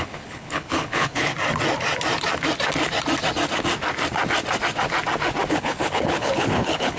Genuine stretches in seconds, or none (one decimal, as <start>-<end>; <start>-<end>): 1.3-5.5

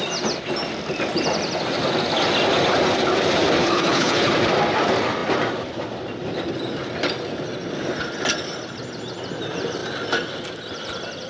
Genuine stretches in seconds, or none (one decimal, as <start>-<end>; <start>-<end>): 0.0-3.6; 4.3-11.3

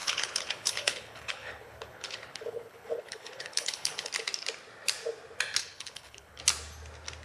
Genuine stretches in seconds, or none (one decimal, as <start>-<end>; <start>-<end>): 4.1-5.6; 6.4-7.2